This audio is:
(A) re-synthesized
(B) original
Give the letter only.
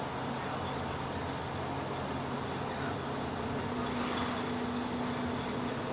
B